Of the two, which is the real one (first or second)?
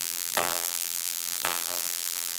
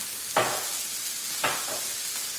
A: second